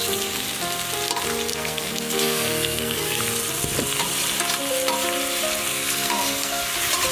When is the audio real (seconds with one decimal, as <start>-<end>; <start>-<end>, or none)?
0.0-1.5; 3.2-5.7; 6.6-7.1